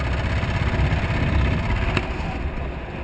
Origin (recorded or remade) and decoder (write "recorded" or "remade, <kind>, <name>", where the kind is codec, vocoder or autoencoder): recorded